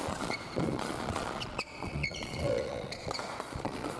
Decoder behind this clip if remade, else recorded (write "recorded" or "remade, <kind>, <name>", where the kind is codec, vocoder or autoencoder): remade, vocoder, Vocos